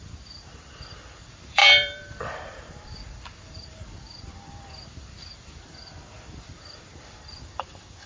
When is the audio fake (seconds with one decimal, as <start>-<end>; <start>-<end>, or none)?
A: 0.0-8.1